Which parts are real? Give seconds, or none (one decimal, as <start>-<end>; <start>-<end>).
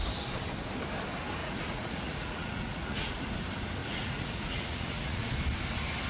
0.0-1.4; 3.1-3.8; 5.3-6.1